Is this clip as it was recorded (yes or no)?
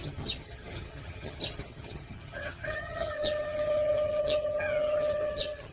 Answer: no